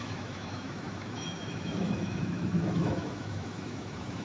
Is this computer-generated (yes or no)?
yes